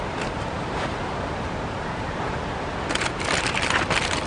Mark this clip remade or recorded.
recorded